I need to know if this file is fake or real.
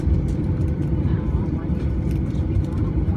fake